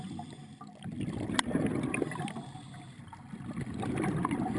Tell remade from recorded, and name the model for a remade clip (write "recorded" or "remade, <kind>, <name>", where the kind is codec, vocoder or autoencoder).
recorded